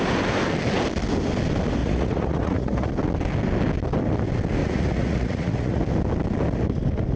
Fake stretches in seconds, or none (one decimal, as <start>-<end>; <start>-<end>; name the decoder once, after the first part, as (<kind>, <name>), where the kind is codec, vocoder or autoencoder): 1.8-2.9 (vocoder, Vocos); 4.6-5.8